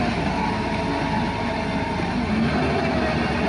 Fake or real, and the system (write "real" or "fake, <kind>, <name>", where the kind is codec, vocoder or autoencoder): real